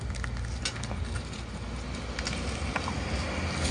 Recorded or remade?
recorded